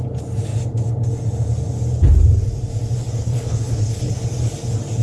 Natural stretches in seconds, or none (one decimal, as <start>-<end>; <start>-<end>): 0.0-3.2; 4.1-5.0